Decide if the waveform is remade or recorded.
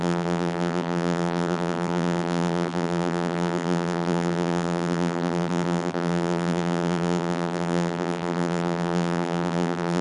remade